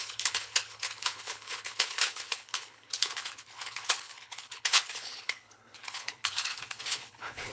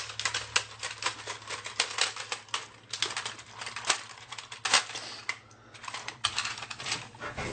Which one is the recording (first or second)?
second